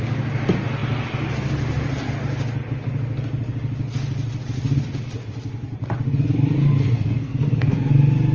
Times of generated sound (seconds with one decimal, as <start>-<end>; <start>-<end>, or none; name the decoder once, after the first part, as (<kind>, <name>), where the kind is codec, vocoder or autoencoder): 6.8-7.9 (codec, SNAC)